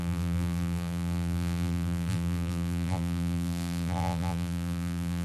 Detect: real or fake fake